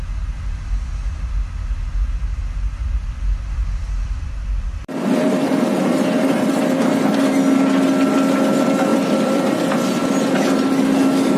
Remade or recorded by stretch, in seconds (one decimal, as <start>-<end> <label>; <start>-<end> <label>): 0.0-3.0 recorded; 3.0-7.2 remade; 7.2-8.9 recorded; 8.9-9.4 remade; 9.4-11.4 recorded